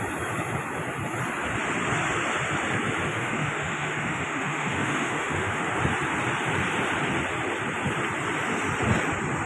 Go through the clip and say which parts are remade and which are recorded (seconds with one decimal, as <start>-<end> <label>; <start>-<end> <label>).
0.0-3.1 recorded; 3.1-5.6 remade; 5.6-9.5 recorded